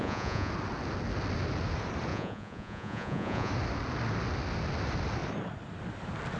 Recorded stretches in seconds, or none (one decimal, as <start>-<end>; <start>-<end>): 0.5-2.1; 3.5-6.4